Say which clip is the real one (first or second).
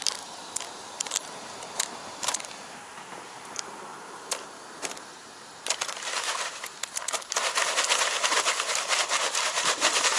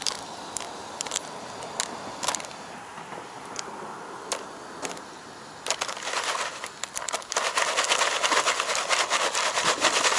second